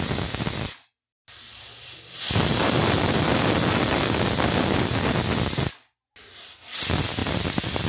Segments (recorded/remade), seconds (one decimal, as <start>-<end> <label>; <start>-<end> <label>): 0.0-1.5 recorded; 1.5-5.1 remade; 5.1-7.2 recorded; 7.2-7.9 remade